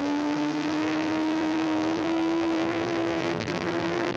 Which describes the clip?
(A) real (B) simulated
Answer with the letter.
B